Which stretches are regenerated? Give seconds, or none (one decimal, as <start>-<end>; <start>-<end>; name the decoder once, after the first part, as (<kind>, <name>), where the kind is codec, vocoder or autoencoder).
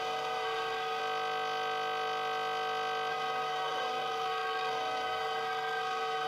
0.0-1.0 (codec, SNAC); 3.1-6.3